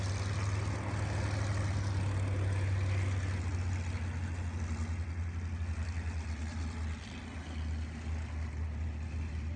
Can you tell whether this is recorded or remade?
recorded